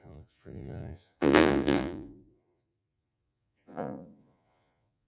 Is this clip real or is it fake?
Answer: fake